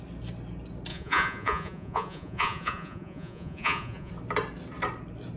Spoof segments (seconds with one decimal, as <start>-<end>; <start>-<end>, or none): 0.9-4.1